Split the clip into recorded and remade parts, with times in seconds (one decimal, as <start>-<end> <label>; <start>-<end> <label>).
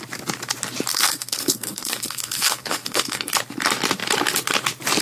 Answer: 0.0-0.9 recorded; 0.9-3.3 remade; 3.3-5.0 recorded